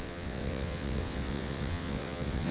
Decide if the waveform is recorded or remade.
remade